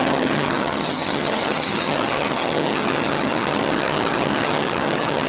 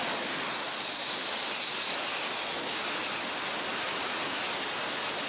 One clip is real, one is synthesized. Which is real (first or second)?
second